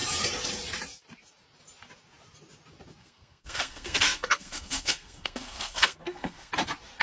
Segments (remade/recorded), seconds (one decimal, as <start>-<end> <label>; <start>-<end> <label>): 0.0-3.0 recorded; 3.0-6.5 remade; 6.5-7.0 recorded